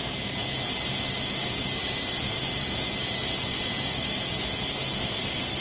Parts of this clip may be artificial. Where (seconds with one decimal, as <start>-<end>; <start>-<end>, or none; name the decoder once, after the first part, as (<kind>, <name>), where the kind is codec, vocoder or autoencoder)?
none